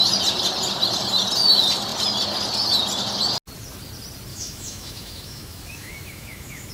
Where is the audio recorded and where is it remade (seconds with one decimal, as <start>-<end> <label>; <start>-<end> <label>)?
0.0-4.3 recorded; 4.3-6.7 remade